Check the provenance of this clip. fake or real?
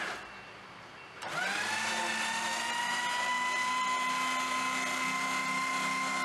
real